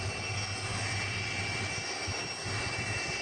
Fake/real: real